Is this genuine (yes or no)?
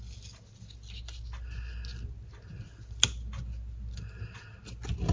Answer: yes